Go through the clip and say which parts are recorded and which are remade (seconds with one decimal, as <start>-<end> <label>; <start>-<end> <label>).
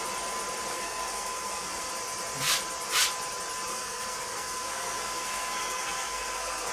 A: 0.0-0.7 recorded; 0.7-1.9 remade; 1.9-3.7 recorded; 3.7-6.7 remade